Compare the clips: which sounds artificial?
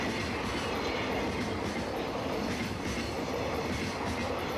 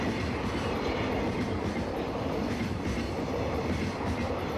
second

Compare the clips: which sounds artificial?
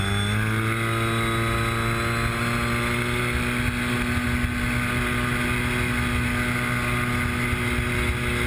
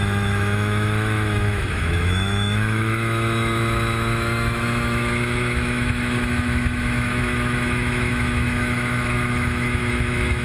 second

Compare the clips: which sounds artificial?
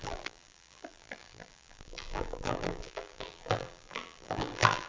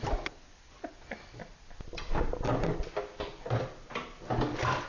first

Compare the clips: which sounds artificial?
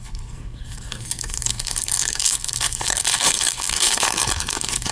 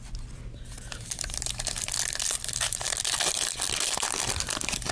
first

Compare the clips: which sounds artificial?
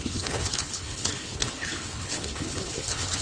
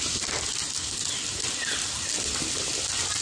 first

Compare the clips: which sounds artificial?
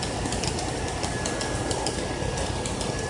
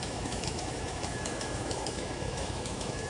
second